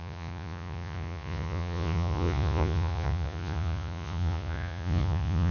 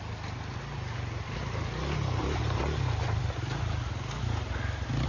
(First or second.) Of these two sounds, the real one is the second